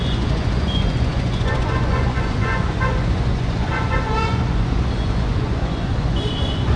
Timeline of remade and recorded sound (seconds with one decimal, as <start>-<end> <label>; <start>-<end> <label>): 0.0-6.8 remade